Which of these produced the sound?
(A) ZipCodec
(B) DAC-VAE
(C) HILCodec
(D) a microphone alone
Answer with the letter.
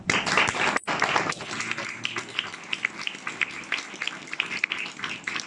D